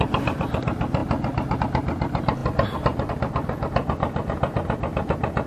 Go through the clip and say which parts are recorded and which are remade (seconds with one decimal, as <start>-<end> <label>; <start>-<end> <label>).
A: 0.0-5.5 recorded